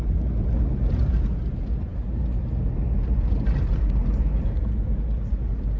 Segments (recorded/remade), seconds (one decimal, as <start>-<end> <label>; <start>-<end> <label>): 0.0-5.8 recorded